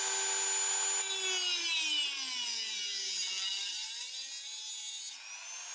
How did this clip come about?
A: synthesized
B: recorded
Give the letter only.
B